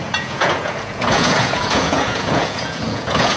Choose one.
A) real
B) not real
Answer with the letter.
B